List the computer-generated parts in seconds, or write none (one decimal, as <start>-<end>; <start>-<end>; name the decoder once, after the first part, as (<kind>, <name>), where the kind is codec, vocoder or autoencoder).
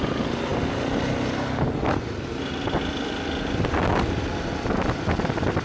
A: none